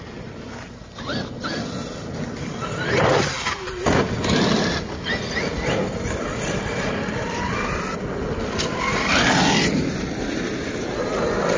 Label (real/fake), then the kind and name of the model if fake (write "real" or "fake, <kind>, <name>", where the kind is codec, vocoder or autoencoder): real